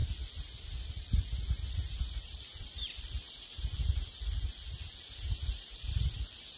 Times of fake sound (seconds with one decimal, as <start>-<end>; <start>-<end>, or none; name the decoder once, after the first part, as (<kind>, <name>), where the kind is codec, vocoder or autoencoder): 2.0-3.2 (vocoder, BigVGAN v2); 5.3-6.6